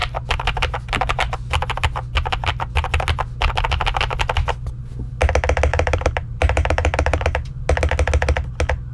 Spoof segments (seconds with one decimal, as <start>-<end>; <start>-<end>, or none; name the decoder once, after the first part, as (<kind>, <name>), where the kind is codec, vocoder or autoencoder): 5.7-7.7 (vocoder, BigVGAN v2)